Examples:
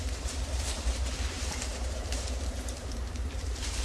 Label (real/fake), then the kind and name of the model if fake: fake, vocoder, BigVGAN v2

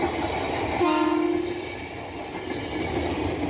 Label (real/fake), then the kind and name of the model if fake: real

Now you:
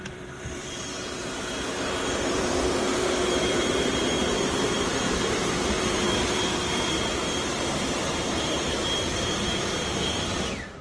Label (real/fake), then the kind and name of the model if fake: fake, vocoder, BigVGAN v2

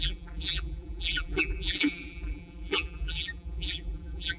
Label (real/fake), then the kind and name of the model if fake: fake, vocoder, BigVGAN v2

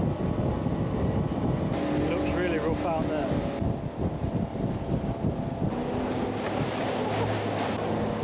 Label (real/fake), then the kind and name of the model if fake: real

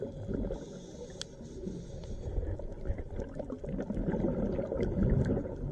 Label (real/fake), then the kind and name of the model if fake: real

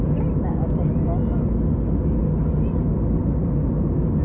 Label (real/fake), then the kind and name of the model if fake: real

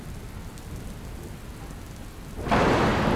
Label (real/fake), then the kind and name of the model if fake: real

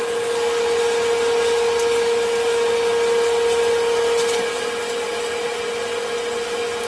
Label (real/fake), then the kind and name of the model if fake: real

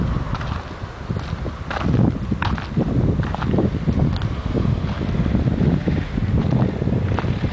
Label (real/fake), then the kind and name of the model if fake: real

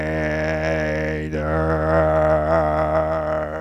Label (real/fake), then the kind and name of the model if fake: real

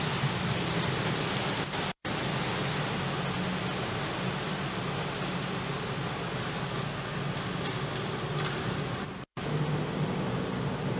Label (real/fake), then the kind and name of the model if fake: real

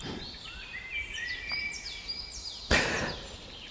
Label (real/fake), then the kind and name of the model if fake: fake, vocoder, BigVGAN v2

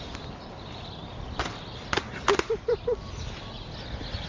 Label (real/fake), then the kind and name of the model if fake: real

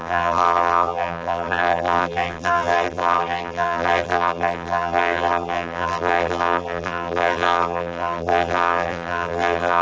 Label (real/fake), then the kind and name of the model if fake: fake, vocoder, BigVGAN v2